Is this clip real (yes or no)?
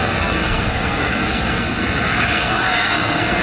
no